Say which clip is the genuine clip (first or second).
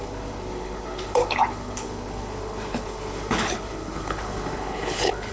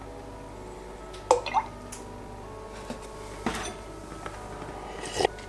second